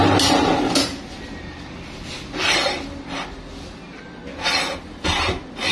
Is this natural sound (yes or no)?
yes